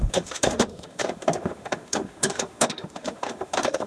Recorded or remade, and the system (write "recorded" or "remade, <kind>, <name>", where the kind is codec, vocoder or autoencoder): remade, autoencoder, DAC-VAE